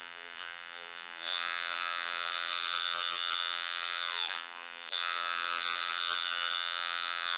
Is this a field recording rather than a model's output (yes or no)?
no